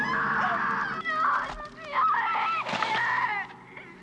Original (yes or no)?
yes